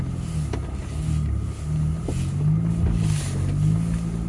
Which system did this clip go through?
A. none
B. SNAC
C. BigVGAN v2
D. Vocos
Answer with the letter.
A